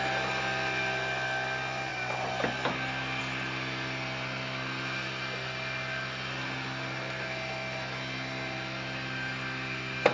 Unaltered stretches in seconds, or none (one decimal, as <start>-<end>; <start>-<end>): 0.0-10.1